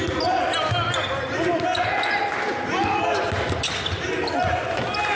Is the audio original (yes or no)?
yes